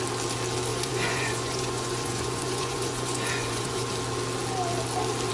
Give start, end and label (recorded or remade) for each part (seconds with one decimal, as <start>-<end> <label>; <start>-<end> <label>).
0.0-0.7 recorded; 0.7-3.9 remade; 3.9-5.3 recorded